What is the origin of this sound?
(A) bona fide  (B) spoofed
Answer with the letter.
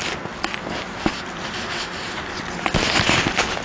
A